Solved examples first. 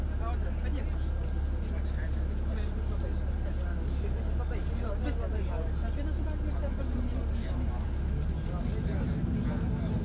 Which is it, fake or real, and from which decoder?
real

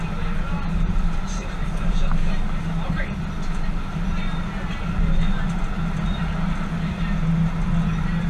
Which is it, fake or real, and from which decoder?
real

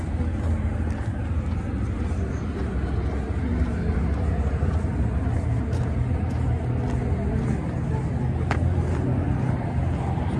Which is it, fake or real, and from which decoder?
real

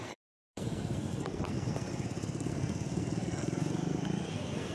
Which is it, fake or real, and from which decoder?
fake, codec, SNAC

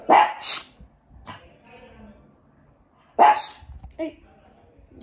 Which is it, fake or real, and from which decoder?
real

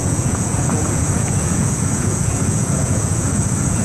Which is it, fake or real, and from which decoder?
fake, vocoder, Vocos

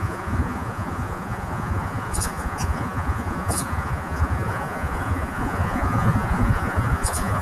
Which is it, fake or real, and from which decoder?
fake, vocoder, Vocos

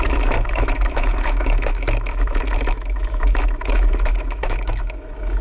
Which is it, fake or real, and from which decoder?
fake, autoencoder, DAC-VAE